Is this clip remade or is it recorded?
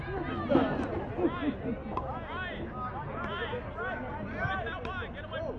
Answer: recorded